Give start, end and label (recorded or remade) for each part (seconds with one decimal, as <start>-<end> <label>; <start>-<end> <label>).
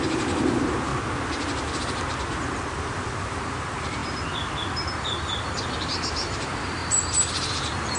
0.0-0.9 remade; 0.9-2.4 recorded; 2.4-4.0 remade; 4.0-5.7 recorded; 5.7-6.8 remade; 6.8-7.5 recorded; 7.5-8.0 remade